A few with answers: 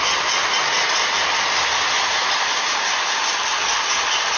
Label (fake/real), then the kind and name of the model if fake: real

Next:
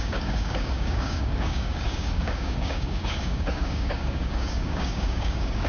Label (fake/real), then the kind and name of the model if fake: fake, codec, DAC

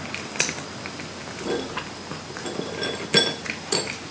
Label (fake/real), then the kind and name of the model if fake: real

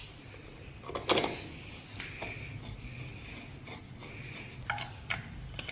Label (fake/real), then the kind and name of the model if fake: real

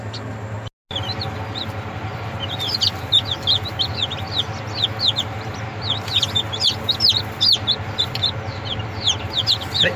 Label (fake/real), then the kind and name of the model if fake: real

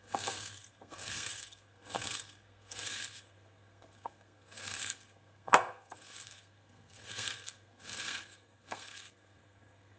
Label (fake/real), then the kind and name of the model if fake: fake, codec, SNAC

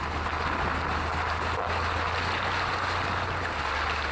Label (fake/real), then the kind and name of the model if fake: real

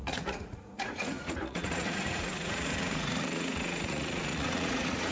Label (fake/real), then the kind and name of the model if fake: fake, vocoder, Vocos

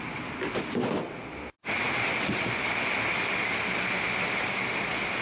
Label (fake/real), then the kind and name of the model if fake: real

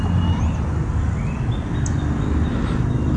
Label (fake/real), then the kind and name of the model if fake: real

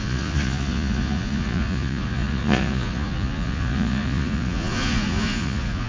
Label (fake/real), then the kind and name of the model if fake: fake, vocoder, Vocos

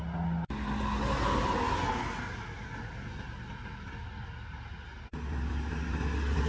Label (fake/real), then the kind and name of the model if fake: real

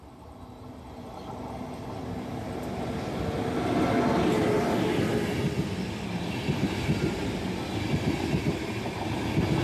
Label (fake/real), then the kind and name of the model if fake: real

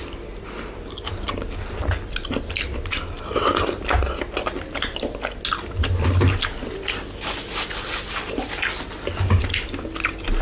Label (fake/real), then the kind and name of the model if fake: real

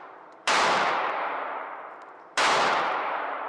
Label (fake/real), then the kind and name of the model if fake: fake, vocoder, BigVGAN v2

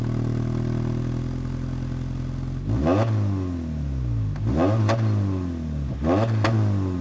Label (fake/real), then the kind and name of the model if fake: real